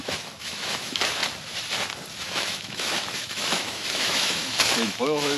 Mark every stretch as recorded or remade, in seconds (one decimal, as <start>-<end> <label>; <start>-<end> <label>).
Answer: 0.0-1.2 remade; 1.2-2.2 recorded; 2.2-5.4 remade